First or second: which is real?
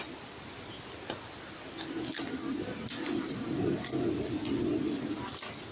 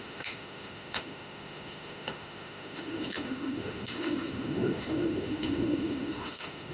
first